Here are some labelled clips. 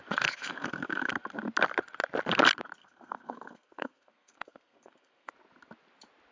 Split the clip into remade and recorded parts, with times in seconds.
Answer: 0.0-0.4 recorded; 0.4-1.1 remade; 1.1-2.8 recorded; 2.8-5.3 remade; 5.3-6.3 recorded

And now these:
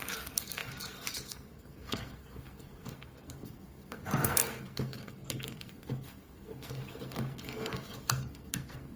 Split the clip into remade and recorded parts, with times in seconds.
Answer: 0.0-9.0 remade

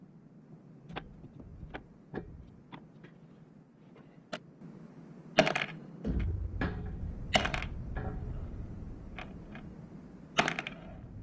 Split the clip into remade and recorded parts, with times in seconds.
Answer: 0.0-11.2 recorded

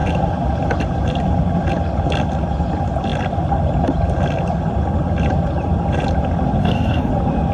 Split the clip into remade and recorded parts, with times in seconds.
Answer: 0.0-6.6 recorded; 6.6-7.1 remade; 7.1-7.5 recorded

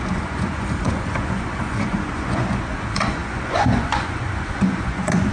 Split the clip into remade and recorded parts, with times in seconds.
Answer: 0.0-5.3 remade

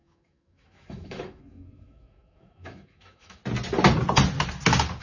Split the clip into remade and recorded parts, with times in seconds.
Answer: 0.0-3.4 remade; 3.4-5.0 recorded